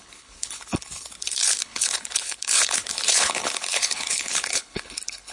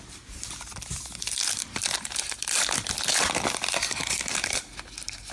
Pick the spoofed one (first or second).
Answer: first